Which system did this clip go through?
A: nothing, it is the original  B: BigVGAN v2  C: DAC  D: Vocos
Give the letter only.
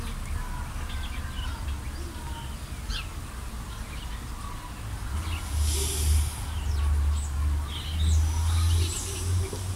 A